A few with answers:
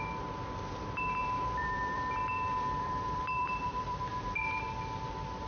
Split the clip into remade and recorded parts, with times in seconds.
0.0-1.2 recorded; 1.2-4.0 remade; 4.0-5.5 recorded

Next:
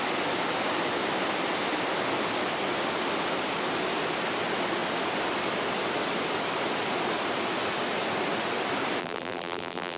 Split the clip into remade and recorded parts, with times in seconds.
0.0-9.0 recorded; 9.0-10.0 remade

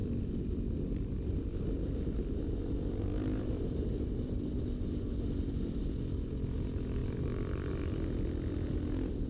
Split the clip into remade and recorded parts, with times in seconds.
0.0-9.3 recorded

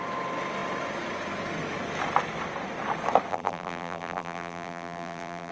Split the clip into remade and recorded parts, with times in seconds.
0.0-3.3 recorded; 3.3-5.5 remade